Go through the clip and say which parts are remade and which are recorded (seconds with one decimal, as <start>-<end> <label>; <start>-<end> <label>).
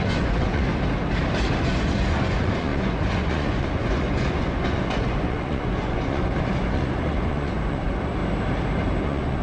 0.0-0.7 remade; 0.7-1.6 recorded; 1.6-8.2 remade; 8.2-9.0 recorded; 9.0-9.4 remade